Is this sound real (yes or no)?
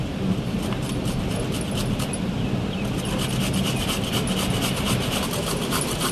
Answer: yes